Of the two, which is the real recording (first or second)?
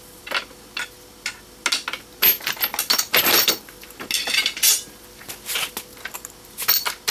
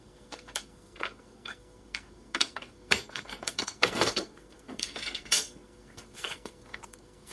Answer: first